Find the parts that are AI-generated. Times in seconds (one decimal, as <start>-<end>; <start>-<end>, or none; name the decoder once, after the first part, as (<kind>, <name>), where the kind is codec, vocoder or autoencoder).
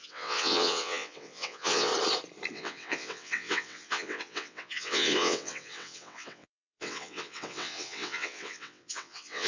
0.0-1.9 (vocoder, WaveNeXt); 2.5-9.5